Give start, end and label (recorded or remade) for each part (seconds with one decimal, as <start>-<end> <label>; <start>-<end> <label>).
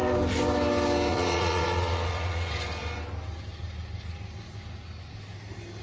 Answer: 0.0-1.1 recorded; 1.1-2.5 remade; 2.5-5.8 recorded